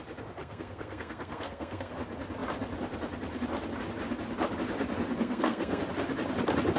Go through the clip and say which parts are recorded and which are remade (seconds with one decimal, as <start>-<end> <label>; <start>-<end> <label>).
0.0-0.4 recorded; 0.4-1.9 remade; 1.9-5.2 recorded; 5.2-5.8 remade; 5.8-6.8 recorded